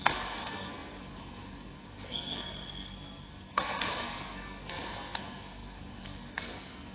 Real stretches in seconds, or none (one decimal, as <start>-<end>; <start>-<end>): none